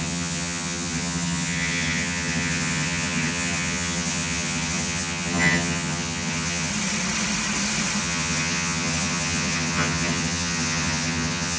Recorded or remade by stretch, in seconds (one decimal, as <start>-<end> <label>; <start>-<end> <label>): 0.0-6.7 remade; 6.7-8.0 recorded; 8.0-11.6 remade